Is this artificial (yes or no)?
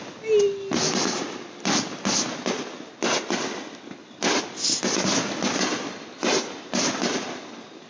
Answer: no